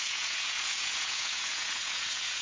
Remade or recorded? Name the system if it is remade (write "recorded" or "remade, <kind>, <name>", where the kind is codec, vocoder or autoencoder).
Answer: remade, vocoder, Vocos